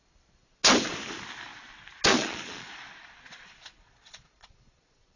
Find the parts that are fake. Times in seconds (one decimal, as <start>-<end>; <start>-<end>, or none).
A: 2.1-5.2